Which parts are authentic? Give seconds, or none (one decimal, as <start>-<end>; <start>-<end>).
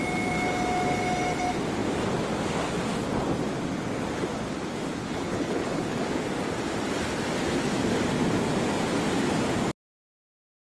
0.0-5.0; 6.0-10.6